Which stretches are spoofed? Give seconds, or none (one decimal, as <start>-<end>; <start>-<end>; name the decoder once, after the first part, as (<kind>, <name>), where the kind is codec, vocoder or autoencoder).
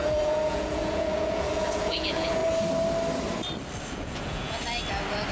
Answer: 0.0-2.4 (vocoder, Vocos); 3.8-4.6